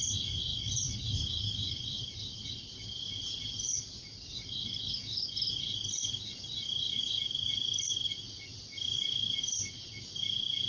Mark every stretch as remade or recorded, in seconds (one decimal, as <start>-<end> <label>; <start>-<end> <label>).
0.0-0.5 recorded; 0.5-4.5 remade; 4.5-6.0 recorded; 6.0-7.1 remade; 7.1-8.5 recorded; 8.5-9.9 remade; 9.9-10.7 recorded

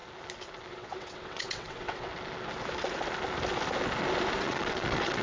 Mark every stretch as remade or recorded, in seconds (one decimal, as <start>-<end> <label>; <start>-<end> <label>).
0.0-0.7 recorded; 0.7-2.1 remade; 2.1-4.4 recorded; 4.4-5.2 remade